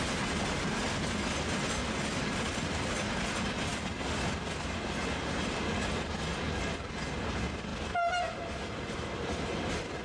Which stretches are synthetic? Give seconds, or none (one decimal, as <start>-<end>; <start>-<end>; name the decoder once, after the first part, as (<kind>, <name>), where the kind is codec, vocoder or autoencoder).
none